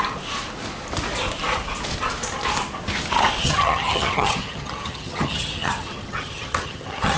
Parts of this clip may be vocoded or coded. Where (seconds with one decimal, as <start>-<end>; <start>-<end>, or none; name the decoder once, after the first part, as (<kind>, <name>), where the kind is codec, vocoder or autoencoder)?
3.4-7.2 (vocoder, HiFi-GAN)